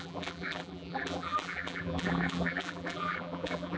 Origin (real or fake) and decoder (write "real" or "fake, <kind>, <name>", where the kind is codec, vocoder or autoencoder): fake, vocoder, BigVGAN v2